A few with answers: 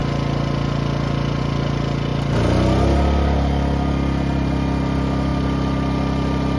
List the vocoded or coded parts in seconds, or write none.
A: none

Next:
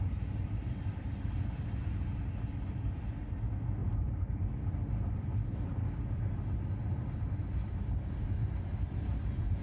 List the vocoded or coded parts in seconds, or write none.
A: none

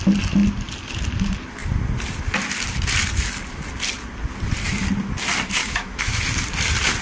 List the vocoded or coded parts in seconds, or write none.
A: 5.6-6.2 (autoencoder, DAC-VAE)

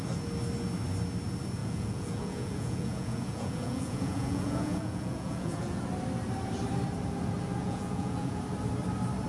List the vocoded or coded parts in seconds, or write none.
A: 1.6-5.8 (vocoder, Vocos); 7.6-8.4

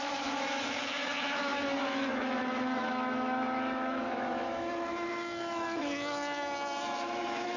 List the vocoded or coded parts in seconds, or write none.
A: 0.0-7.6 (autoencoder, DAC-VAE)

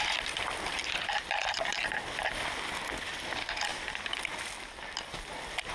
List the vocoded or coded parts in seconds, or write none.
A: none